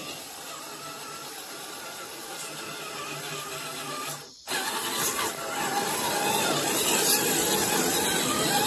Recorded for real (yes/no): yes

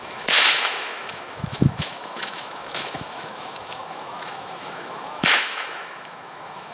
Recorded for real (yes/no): no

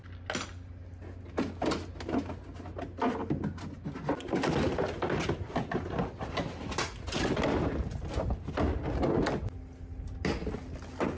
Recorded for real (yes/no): yes